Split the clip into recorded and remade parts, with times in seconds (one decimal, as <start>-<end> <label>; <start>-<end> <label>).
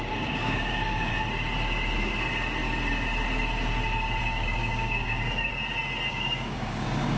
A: 0.0-1.1 remade; 1.1-4.2 recorded; 4.2-5.5 remade; 5.5-6.1 recorded; 6.1-7.2 remade